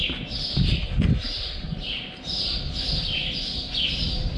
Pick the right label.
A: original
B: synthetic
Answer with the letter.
B